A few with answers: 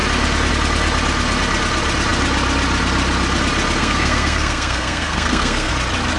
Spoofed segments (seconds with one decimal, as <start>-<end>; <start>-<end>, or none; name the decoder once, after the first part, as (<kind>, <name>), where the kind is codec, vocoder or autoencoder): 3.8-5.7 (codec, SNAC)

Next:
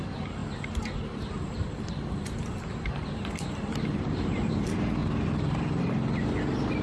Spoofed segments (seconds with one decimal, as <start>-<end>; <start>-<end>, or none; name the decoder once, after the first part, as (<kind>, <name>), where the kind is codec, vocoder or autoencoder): none

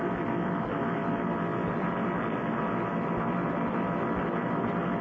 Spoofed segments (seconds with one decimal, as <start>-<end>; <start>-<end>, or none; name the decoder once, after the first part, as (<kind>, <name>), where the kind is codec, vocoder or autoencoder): none

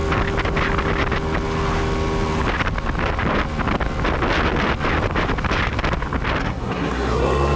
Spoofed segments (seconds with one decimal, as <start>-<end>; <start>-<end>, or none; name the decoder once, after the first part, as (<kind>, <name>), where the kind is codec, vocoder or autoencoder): 6.4-7.6 (codec, SNAC)

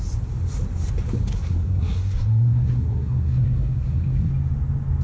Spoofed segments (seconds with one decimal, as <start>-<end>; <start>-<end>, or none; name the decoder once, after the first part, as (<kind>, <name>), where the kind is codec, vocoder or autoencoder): 1.3-4.3 (codec, SNAC)